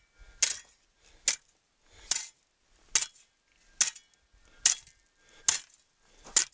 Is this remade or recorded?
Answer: recorded